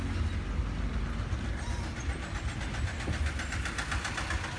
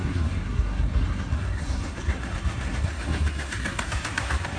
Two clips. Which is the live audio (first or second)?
first